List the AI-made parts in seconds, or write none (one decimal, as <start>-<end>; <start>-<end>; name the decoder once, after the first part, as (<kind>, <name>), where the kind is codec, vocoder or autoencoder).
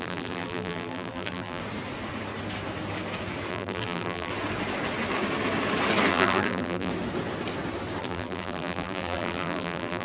0.0-1.6 (vocoder, BigVGAN v2); 3.5-4.3; 6.1-6.9; 8.0-10.0